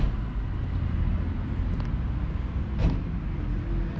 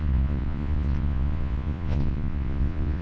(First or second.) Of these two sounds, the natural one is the first